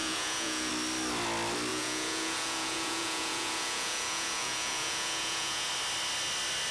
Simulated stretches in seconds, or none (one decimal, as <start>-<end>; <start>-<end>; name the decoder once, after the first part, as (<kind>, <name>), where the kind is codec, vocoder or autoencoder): 0.0-0.7 (vocoder, Vocos); 1.7-5.7